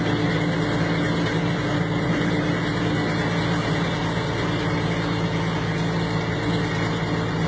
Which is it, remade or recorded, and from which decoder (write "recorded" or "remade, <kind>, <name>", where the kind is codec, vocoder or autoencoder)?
recorded